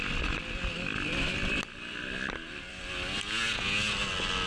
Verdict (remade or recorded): recorded